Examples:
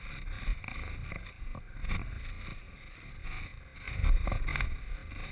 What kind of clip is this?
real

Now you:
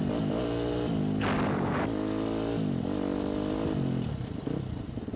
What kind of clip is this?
real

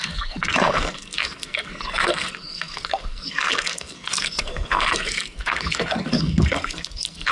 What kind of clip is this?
fake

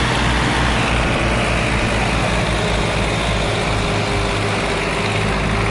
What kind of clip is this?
real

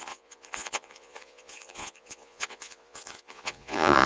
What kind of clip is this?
fake